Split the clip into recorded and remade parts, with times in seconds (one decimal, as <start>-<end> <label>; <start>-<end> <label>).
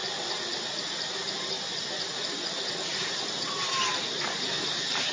0.0-2.3 recorded; 2.3-3.8 remade; 3.8-5.1 recorded